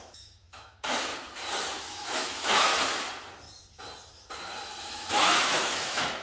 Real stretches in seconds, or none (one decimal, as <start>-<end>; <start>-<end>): 1.1-1.8; 2.7-4.8